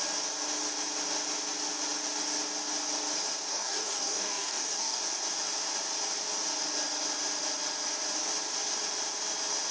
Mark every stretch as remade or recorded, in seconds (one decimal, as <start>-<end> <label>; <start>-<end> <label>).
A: 0.0-3.5 recorded; 3.5-5.0 remade; 5.0-9.7 recorded